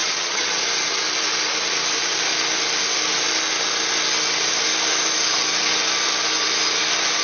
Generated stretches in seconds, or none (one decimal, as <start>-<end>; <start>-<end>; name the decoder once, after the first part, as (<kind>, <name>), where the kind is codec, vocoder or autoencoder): 0.0-0.6 (vocoder, HiFi-GAN)